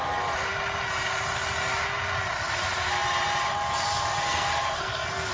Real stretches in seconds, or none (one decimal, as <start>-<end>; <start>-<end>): 0.0-4.2